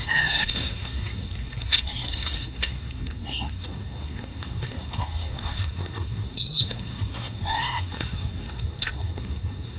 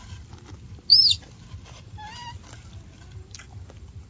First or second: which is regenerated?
first